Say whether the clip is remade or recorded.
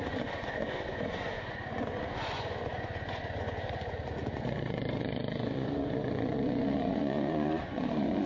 remade